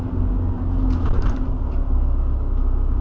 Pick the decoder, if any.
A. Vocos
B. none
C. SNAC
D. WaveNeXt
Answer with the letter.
B